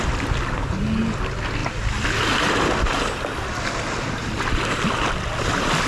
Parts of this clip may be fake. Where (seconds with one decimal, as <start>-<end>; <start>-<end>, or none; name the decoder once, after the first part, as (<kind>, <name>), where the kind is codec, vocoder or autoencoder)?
none